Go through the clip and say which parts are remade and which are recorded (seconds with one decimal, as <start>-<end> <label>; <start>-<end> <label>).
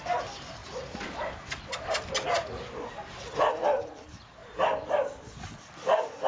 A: 0.0-6.3 recorded